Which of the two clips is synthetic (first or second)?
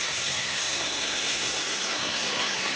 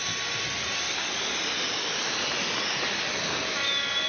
first